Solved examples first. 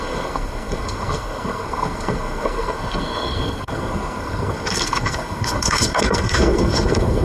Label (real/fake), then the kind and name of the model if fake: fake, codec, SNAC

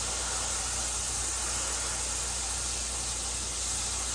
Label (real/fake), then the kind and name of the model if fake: real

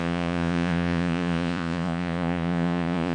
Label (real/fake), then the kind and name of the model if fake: fake, vocoder, Vocos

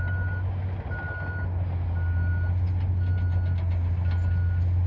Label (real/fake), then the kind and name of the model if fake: real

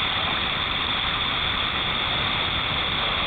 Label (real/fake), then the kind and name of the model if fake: real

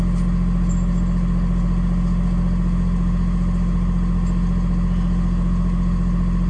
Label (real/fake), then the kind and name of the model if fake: real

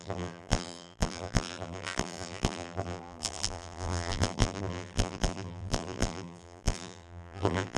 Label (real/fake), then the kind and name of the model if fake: fake, vocoder, BigVGAN v2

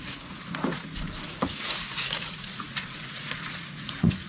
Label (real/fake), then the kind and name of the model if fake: fake, vocoder, Vocos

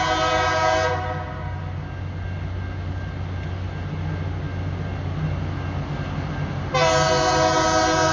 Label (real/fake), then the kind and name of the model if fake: real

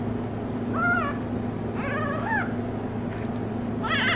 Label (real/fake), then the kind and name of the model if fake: real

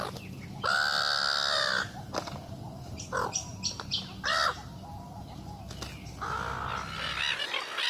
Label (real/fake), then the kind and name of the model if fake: real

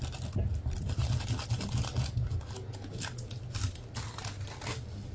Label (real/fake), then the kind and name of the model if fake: real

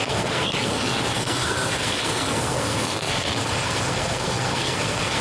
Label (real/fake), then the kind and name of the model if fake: fake, codec, SNAC